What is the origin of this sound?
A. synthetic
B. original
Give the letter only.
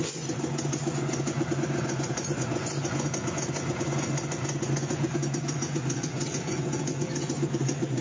A